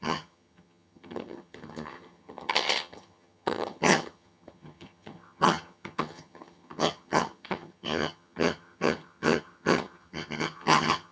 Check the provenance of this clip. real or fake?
fake